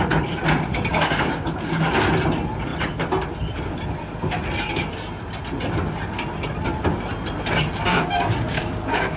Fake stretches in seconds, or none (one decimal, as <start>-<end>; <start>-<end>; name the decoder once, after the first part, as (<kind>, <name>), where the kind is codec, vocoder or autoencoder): 0.9-2.1 (codec, DAC); 7.9-9.2